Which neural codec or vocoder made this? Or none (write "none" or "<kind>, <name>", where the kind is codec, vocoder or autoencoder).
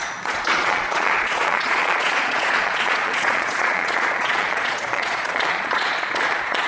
vocoder, Vocos